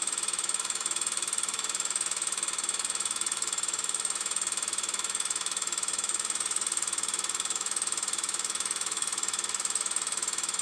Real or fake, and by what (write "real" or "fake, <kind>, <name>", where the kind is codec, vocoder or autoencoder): fake, autoencoder, DAC-VAE